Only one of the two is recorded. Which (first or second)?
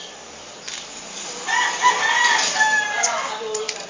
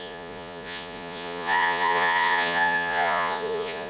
first